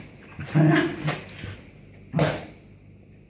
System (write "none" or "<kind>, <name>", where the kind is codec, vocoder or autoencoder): none